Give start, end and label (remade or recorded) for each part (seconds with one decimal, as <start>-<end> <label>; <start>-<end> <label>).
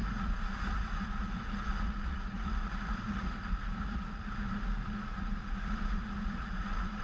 0.0-4.2 remade; 4.2-5.1 recorded; 5.1-7.0 remade